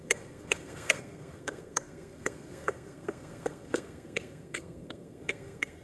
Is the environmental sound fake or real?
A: fake